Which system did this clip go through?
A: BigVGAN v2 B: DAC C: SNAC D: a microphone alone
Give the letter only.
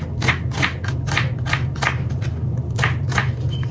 D